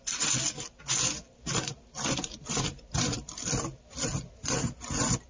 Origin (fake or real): real